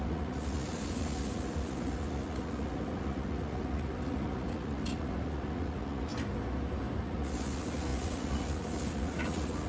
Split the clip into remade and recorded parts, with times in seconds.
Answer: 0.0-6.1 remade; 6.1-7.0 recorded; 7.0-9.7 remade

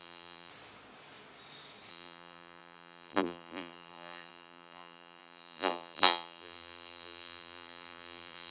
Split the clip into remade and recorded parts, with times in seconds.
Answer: 0.0-0.5 remade; 0.5-1.9 recorded; 1.9-8.5 remade

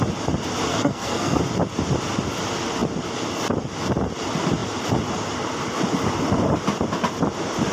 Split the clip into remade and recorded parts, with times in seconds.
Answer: 0.0-0.7 recorded; 0.7-1.4 remade; 1.4-7.7 recorded

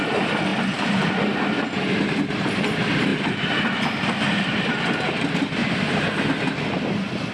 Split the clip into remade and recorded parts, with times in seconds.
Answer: 0.0-7.3 recorded